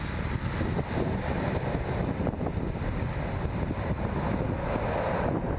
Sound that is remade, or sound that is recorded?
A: recorded